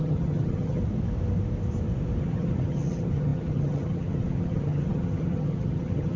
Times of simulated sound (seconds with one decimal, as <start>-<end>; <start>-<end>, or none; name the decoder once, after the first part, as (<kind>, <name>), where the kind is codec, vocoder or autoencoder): 0.0-0.8 (vocoder, HiFi-GAN); 2.2-6.2